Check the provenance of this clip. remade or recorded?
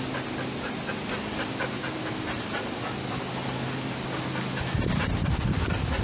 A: recorded